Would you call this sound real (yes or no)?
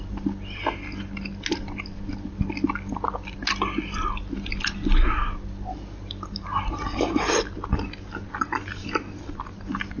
yes